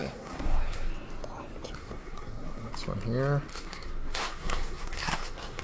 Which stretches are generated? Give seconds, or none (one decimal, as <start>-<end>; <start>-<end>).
0.0-0.9; 1.8-2.7; 3.5-5.6